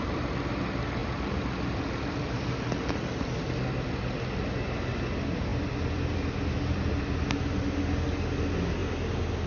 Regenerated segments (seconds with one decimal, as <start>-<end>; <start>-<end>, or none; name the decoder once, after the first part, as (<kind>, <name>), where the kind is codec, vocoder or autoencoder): 1.0-3.2 (vocoder, BigVGAN v2)